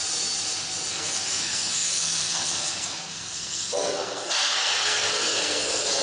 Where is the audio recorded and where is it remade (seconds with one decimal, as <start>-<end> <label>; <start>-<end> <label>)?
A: 0.0-0.9 recorded; 0.9-6.0 remade